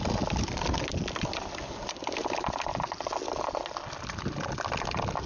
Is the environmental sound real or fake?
real